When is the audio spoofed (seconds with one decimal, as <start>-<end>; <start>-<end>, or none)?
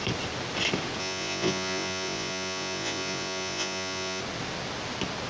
1.0-4.2